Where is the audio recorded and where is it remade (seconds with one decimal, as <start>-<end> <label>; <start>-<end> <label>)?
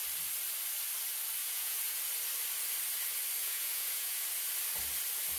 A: 0.0-1.4 recorded; 1.4-2.0 remade; 2.0-3.4 recorded; 3.4-4.2 remade; 4.2-5.4 recorded